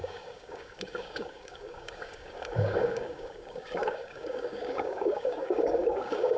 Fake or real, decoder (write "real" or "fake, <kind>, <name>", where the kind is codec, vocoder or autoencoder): fake, codec, DAC